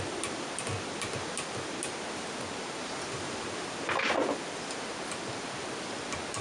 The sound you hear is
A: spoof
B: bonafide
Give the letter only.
B